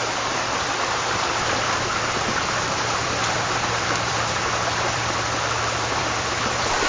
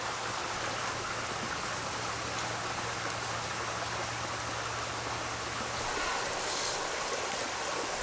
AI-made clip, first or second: first